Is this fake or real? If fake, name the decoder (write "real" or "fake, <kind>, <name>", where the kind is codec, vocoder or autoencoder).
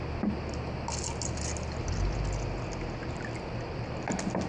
real